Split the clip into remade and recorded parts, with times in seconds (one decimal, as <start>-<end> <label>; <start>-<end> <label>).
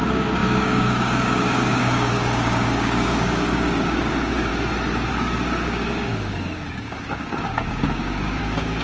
0.0-4.5 remade; 4.5-5.1 recorded; 5.1-8.8 remade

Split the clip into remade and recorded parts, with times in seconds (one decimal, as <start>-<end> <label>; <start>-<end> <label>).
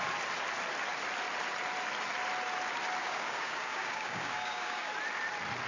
0.0-3.0 recorded; 3.0-4.9 remade; 4.9-5.7 recorded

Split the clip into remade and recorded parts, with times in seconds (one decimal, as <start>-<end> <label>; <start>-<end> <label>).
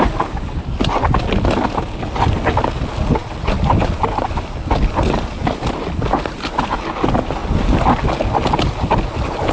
0.0-9.5 recorded